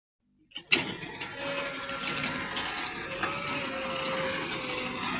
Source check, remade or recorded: recorded